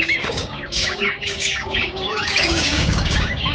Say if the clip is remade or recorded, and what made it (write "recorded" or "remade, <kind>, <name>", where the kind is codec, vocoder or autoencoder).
remade, codec, DAC